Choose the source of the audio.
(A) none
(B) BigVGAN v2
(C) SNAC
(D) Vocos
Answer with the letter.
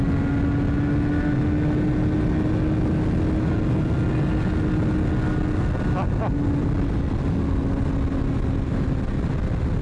A